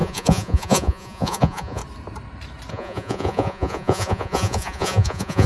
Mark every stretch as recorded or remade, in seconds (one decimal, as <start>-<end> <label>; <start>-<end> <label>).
0.0-1.8 remade; 1.8-2.7 recorded; 2.7-5.5 remade